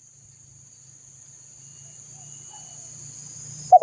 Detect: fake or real real